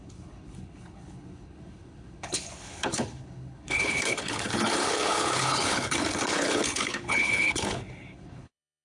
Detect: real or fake fake